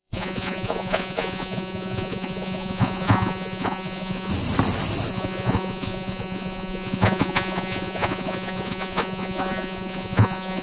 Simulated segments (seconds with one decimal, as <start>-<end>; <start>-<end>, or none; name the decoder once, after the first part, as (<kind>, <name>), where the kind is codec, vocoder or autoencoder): 0.0-4.3 (vocoder, Vocos); 5.1-10.6